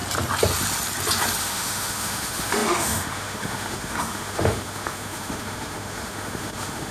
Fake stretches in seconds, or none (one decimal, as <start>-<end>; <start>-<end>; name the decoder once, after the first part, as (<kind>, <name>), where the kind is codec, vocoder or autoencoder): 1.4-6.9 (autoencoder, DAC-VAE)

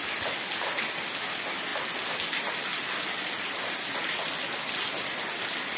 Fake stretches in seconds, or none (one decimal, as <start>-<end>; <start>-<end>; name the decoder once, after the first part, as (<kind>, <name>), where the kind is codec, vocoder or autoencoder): none

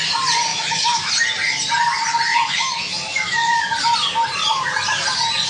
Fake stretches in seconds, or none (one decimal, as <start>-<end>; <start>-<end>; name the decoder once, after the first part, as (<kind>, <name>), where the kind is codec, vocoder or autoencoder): 0.5-1.1 (autoencoder, DAC-VAE); 2.3-3.6

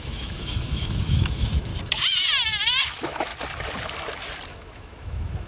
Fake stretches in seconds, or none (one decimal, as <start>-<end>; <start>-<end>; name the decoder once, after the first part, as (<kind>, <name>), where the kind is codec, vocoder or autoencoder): 0.0-1.7 (autoencoder, DAC-VAE); 2.8-3.3; 4.5-5.5

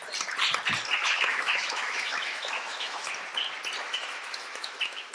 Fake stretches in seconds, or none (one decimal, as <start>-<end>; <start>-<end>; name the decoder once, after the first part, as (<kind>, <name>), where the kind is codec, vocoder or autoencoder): 1.0-3.1 (autoencoder, DAC-VAE); 3.8-5.1

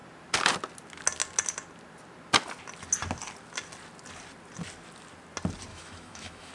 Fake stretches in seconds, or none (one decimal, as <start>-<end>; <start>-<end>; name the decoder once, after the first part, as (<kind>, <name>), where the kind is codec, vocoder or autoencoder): 5.7-6.5 (autoencoder, DAC-VAE)

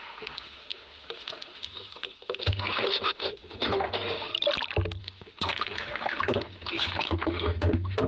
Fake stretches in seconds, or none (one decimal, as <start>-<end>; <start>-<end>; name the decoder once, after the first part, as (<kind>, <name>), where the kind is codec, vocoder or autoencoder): 0.0-4.3 (autoencoder, DAC-VAE); 5.0-8.1